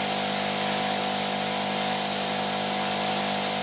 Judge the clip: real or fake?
real